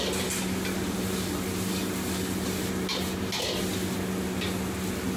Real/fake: real